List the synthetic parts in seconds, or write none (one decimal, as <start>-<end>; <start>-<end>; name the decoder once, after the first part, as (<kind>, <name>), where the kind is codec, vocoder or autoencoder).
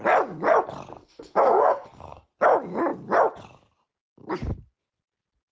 1.0-2.3 (codec, SNAC)